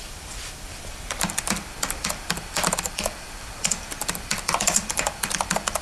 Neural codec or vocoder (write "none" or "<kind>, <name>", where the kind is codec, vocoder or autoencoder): vocoder, BigVGAN v2